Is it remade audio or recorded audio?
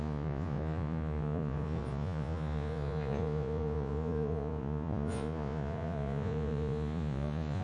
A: remade